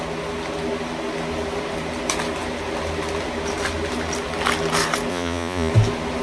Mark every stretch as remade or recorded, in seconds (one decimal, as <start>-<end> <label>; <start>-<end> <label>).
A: 0.0-5.1 recorded; 5.1-5.7 remade; 5.7-6.2 recorded

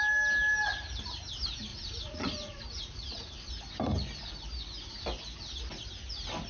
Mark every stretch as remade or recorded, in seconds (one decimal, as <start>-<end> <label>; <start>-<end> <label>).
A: 0.0-1.7 recorded; 1.7-3.5 remade; 3.5-6.5 recorded